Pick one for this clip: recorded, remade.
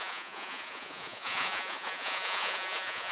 remade